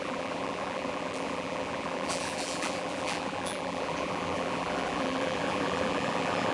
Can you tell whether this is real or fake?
fake